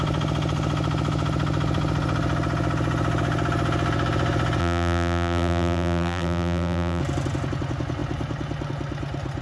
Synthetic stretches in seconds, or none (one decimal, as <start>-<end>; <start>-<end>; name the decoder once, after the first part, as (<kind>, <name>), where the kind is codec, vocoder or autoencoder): 4.6-7.0 (vocoder, BigVGAN v2)